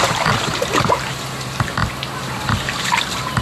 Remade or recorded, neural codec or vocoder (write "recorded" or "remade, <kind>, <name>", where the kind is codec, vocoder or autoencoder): remade, vocoder, BigVGAN v2